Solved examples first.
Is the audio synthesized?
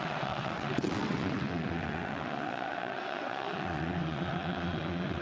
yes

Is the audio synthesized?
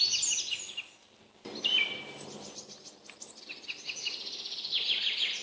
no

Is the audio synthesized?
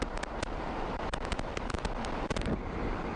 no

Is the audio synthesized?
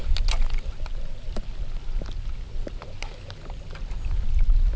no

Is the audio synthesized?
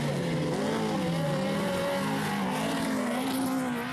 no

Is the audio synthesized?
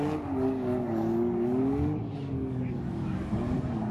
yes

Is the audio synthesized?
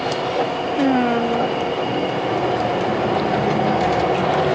no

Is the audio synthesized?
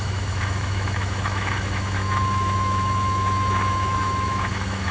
yes